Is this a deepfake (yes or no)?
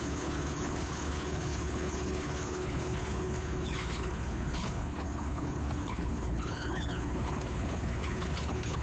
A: yes